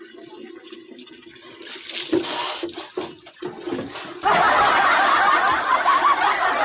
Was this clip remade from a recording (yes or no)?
no